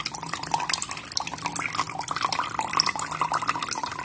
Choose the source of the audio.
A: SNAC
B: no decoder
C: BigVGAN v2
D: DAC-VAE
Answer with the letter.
B